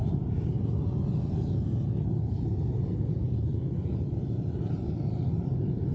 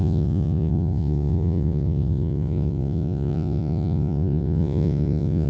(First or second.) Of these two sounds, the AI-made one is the second